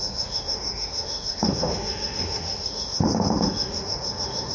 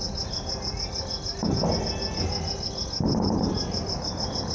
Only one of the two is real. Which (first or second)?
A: second